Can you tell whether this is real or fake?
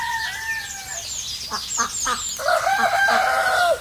real